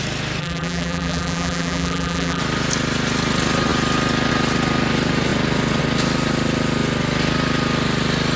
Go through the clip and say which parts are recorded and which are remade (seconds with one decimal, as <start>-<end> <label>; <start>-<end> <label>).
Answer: 0.0-0.4 recorded; 0.4-2.4 remade; 2.4-8.4 recorded